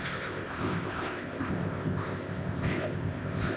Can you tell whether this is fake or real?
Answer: fake